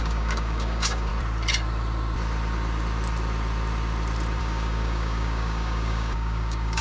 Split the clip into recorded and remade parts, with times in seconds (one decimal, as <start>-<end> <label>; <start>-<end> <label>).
0.0-1.1 remade; 1.1-4.4 recorded; 4.4-6.8 remade